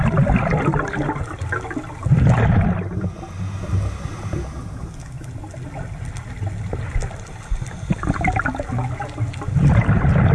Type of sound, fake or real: real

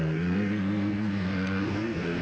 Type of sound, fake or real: fake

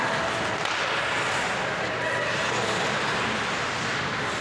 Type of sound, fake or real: real